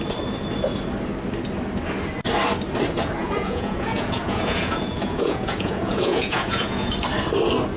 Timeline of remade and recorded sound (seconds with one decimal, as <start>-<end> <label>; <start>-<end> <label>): 0.0-3.2 recorded; 3.2-6.9 remade; 6.9-7.8 recorded